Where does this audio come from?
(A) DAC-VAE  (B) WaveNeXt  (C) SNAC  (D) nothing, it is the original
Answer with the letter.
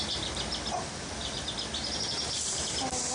D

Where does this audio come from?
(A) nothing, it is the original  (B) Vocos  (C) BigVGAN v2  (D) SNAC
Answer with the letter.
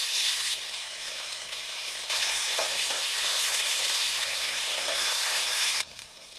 D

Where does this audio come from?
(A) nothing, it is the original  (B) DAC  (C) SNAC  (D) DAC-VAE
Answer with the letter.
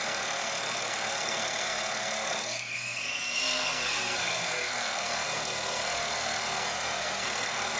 C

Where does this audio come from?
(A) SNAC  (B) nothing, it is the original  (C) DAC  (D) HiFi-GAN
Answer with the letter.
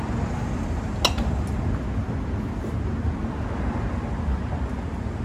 B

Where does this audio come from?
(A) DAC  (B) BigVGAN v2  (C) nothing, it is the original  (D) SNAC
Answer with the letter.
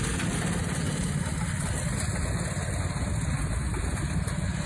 C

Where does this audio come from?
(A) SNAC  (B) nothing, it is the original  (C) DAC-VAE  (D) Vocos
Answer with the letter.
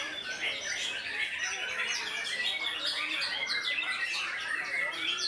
B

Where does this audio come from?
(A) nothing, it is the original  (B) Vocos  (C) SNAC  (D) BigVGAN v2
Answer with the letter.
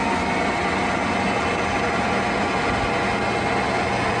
A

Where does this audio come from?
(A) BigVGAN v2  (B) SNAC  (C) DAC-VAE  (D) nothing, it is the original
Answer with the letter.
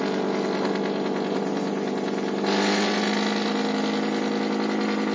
D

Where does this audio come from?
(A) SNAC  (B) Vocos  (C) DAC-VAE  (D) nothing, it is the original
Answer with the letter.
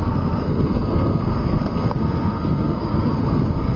A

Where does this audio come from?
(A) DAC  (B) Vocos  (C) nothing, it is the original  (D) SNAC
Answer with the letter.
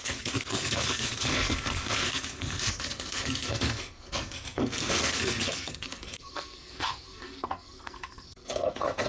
D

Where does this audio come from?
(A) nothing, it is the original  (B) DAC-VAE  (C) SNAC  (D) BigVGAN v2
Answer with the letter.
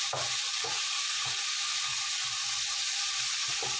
A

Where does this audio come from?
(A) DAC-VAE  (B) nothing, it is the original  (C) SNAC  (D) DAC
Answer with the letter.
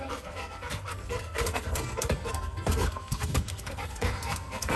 C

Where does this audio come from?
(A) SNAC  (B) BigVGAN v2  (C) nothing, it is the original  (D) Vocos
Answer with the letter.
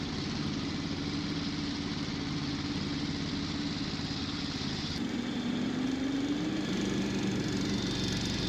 C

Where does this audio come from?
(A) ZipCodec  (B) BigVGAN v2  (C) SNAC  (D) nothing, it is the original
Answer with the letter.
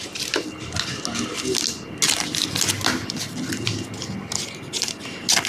D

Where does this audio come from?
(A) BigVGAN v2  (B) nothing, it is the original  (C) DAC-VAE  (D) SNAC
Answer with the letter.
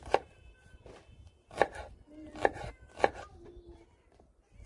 B